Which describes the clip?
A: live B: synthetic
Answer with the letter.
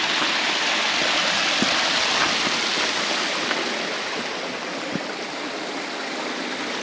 A